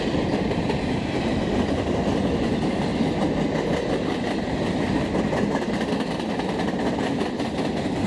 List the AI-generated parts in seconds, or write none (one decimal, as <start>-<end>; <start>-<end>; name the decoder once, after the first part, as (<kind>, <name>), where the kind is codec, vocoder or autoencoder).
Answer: 0.0-2.9 (vocoder, BigVGAN v2); 3.9-8.1